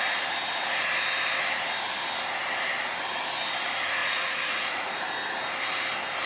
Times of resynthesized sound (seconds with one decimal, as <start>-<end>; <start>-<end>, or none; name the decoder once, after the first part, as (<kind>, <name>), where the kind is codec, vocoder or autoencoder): 4.0-5.0 (vocoder, Vocos)